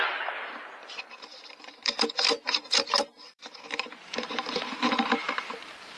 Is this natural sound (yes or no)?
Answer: no